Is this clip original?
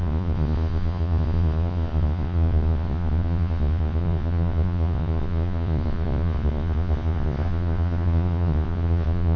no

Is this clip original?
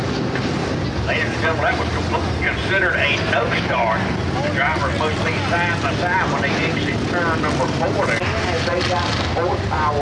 yes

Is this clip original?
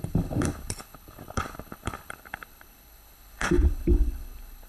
no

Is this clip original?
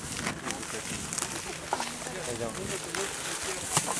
yes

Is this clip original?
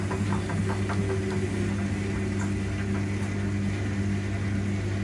yes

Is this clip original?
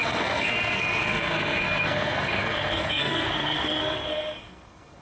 no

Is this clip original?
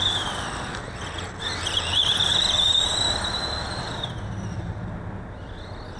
yes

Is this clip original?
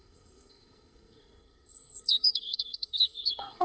no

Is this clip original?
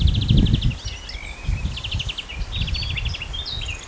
yes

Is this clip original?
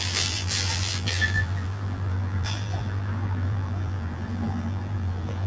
no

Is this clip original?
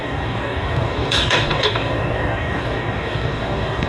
no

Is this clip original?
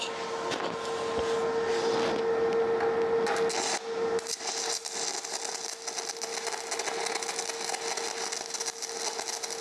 yes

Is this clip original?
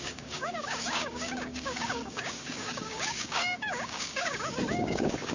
no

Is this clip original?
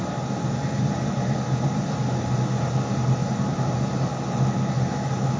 yes